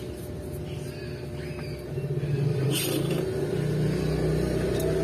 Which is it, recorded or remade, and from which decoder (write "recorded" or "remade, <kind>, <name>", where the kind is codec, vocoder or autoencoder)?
recorded